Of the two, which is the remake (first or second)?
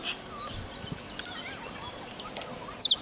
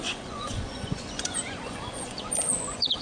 second